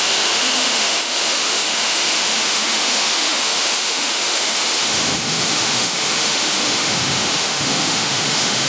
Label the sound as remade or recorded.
remade